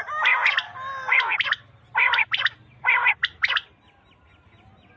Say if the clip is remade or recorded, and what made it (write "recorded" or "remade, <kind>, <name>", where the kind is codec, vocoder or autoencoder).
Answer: recorded